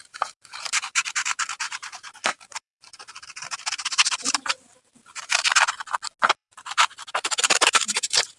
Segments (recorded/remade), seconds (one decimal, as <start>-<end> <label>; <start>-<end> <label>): 0.0-5.4 remade; 5.4-6.3 recorded; 6.3-8.4 remade